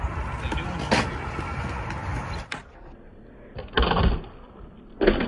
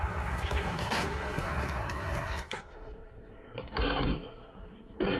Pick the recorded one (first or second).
first